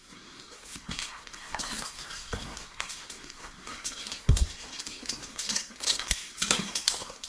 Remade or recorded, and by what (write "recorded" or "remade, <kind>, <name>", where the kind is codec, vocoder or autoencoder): remade, codec, SNAC